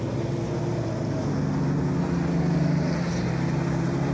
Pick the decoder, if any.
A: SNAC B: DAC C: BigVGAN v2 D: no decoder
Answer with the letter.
D